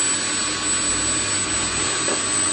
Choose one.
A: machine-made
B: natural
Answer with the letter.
B